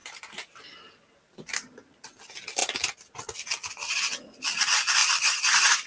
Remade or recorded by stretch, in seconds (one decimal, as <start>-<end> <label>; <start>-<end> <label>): 0.0-0.6 remade; 0.6-5.0 recorded; 5.0-5.9 remade

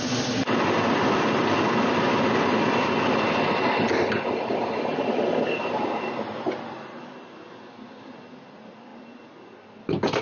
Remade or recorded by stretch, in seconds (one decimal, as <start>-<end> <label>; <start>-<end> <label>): 0.0-10.2 recorded

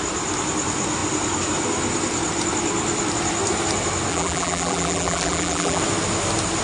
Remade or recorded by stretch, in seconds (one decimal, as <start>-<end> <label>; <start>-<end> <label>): 0.0-4.1 recorded; 4.1-5.8 remade; 5.8-6.6 recorded